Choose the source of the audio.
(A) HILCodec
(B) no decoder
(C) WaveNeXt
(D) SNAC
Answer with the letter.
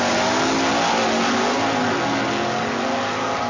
B